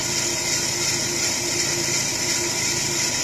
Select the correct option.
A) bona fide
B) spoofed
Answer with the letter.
A